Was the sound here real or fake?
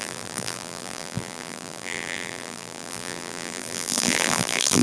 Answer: fake